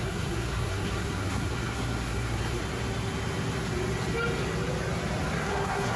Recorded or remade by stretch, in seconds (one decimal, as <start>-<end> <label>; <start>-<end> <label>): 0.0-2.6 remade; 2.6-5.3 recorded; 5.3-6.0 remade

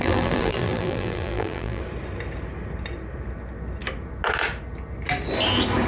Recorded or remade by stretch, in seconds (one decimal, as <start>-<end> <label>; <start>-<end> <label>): 0.0-1.8 remade; 1.8-5.9 recorded

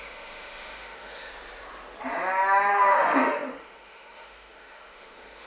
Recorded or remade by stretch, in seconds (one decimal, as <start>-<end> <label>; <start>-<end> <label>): 0.0-1.3 remade; 1.3-2.7 recorded; 2.7-5.5 remade

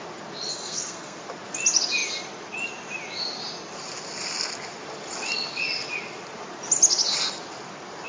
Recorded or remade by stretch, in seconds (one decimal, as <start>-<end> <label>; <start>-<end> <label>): 0.0-0.5 recorded; 0.5-1.2 remade; 1.2-8.1 recorded